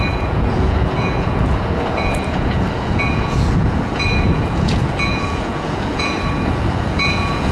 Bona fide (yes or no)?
no